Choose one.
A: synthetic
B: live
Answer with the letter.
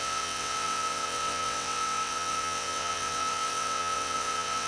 A